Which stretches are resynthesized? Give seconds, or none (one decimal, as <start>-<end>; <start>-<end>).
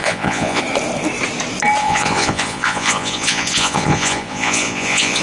0.0-0.6; 1.8-5.2